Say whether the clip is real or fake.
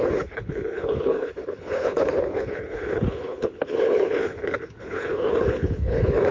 fake